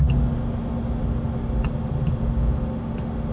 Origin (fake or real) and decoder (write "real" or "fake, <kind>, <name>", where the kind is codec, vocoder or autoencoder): real